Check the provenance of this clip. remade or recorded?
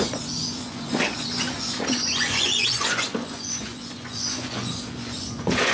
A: remade